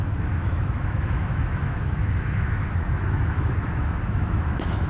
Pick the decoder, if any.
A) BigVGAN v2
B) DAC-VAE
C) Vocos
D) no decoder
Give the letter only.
B